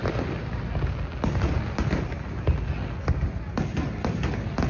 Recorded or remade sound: recorded